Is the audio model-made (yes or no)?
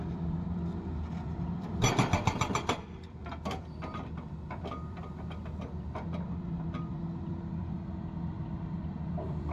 yes